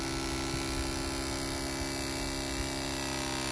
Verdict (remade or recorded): recorded